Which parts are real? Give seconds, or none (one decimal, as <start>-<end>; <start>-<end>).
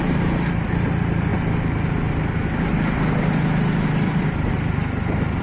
0.0-5.4